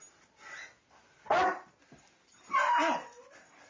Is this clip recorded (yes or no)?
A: yes